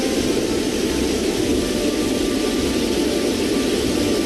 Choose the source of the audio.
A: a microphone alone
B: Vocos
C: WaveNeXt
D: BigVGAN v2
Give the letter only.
A